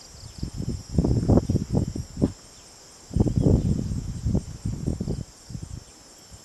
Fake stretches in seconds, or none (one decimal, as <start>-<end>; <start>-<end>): none